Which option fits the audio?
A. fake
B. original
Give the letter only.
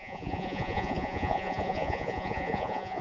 A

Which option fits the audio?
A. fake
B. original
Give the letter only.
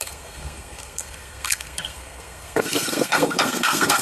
A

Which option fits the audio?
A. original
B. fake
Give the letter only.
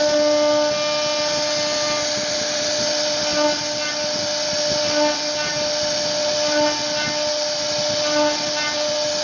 A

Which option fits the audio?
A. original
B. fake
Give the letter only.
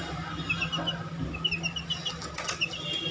A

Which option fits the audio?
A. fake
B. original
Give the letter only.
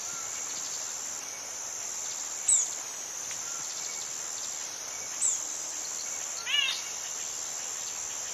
B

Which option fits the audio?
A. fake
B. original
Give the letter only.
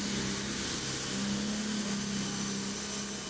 B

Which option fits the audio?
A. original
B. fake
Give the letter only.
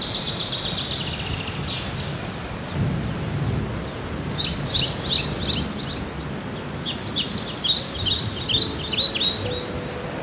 A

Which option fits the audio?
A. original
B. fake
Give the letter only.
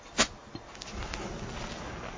A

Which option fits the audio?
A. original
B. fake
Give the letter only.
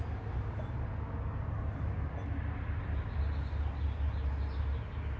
A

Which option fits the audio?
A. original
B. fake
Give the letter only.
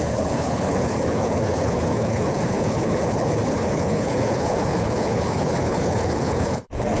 B